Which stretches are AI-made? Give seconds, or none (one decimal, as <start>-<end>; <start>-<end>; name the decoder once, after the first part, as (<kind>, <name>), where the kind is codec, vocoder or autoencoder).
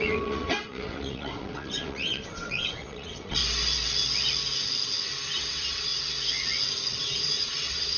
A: 0.0-3.4 (vocoder, WaveNeXt); 5.5-5.9; 7.0-8.0